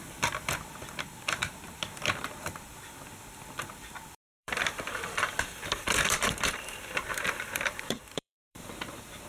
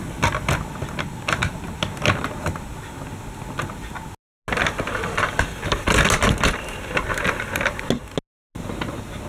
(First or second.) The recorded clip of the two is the second